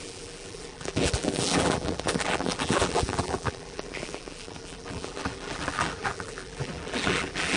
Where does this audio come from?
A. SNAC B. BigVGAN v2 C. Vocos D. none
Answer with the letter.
B